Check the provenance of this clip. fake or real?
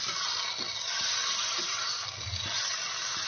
real